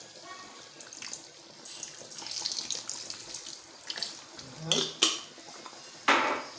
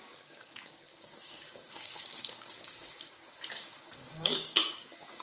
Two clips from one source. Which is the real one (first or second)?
first